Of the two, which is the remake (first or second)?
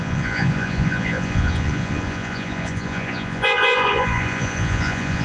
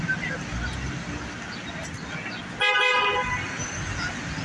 first